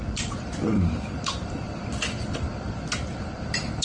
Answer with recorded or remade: remade